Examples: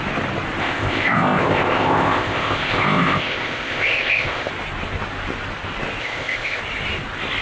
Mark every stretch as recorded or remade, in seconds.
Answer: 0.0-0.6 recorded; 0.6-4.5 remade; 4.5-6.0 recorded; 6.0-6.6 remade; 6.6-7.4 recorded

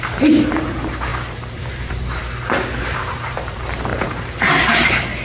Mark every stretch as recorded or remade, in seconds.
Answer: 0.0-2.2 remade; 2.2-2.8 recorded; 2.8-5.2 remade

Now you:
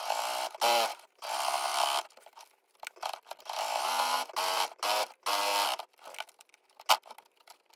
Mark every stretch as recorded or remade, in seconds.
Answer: 0.0-7.8 recorded

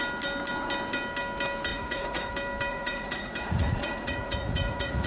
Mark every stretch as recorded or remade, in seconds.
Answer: 0.0-1.7 recorded; 1.7-2.3 remade; 2.3-2.7 recorded; 2.7-5.1 remade